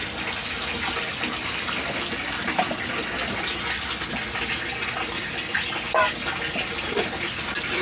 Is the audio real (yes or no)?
yes